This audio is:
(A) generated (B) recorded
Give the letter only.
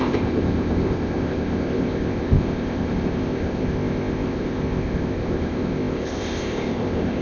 A